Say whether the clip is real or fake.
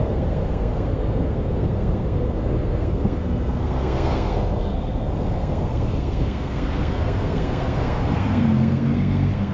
fake